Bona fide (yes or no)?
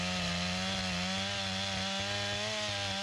yes